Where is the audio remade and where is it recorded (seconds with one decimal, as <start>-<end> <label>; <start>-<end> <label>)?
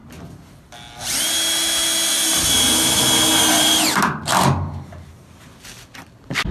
0.0-4.3 recorded; 4.3-5.1 remade; 5.1-6.5 recorded